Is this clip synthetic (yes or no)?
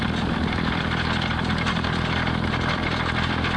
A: yes